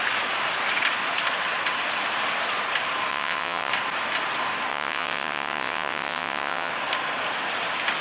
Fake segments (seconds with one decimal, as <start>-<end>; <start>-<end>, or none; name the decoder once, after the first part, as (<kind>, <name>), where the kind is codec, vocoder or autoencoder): 3.1-3.7 (vocoder, WaveNeXt); 4.7-6.7

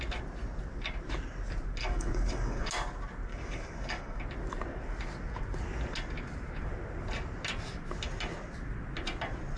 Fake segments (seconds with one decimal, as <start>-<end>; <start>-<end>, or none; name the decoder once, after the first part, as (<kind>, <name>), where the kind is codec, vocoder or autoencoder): 1.8-2.7 (codec, DAC); 3.3-4.2

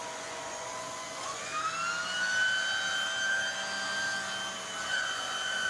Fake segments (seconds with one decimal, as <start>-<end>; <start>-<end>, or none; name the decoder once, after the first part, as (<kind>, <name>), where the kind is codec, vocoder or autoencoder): 0.0-1.5 (vocoder, Vocos); 4.9-5.7

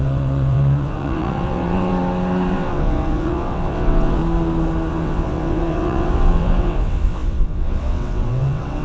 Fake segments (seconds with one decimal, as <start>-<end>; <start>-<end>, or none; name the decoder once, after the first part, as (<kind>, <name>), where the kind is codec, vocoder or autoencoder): 0.0-1.9 (vocoder, WaveNeXt); 2.5-4.2; 4.9-8.8

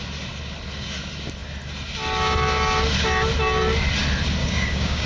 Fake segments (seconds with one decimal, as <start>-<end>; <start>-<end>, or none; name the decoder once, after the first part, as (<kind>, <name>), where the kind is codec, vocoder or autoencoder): 4.4-5.1 (codec, DAC)